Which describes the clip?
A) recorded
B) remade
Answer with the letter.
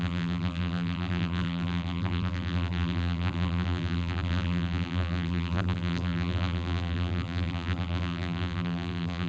B